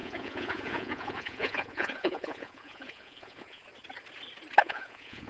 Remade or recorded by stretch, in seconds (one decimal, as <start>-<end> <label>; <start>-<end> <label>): 0.0-3.6 remade; 3.6-4.6 recorded; 4.6-5.3 remade